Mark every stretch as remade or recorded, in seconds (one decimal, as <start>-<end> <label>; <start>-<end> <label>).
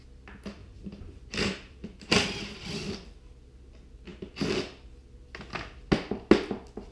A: 0.0-0.6 recorded; 0.6-3.2 remade; 3.2-6.9 recorded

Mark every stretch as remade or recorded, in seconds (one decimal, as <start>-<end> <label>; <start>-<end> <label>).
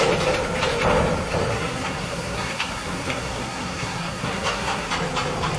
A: 0.0-1.5 recorded; 1.5-4.9 remade; 4.9-5.6 recorded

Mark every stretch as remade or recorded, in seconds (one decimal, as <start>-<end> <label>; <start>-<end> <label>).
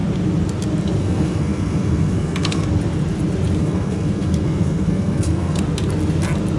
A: 0.0-1.0 recorded; 1.0-2.6 remade; 2.6-3.6 recorded; 3.6-5.6 remade; 5.6-6.6 recorded